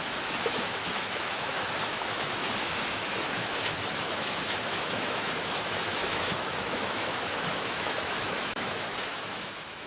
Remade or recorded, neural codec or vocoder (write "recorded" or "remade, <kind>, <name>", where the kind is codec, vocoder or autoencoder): remade, autoencoder, DAC-VAE